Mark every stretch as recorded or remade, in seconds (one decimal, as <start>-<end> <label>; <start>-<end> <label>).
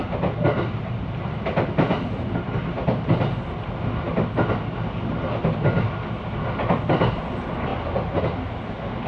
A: 0.0-9.1 recorded